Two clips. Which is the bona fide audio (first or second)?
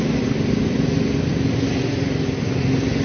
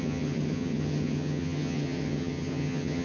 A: first